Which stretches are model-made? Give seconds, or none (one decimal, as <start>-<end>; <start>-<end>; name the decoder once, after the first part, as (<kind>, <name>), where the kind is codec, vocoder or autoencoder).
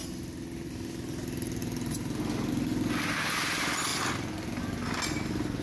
none